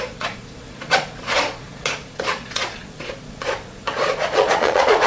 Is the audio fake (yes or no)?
yes